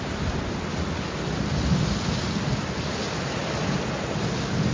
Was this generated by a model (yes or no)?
no